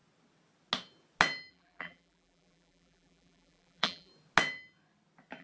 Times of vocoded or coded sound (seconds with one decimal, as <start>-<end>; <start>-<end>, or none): 1.5-4.1